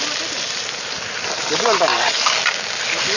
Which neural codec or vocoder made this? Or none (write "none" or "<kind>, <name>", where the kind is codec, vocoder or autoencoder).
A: none